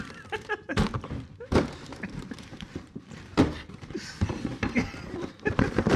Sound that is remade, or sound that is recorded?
remade